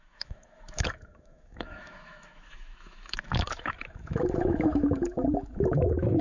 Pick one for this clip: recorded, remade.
remade